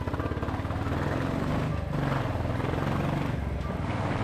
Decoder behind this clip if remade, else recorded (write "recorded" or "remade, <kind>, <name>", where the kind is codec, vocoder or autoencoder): recorded